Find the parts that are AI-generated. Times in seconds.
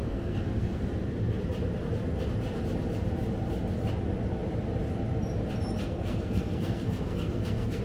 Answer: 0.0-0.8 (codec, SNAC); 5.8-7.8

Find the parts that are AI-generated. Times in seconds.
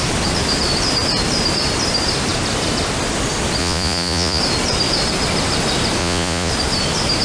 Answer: 3.6-4.4 (vocoder, Vocos); 6.0-6.5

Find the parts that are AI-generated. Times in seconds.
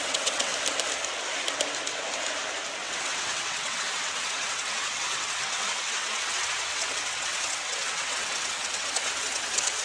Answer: 0.0-0.5 (vocoder, WaveNeXt); 2.7-9.8